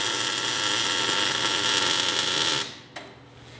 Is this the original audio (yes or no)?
yes